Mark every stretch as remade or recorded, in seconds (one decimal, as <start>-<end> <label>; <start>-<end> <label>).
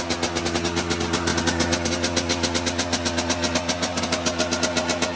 0.0-5.2 recorded